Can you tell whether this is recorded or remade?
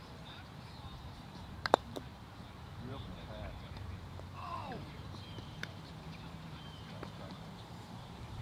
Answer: remade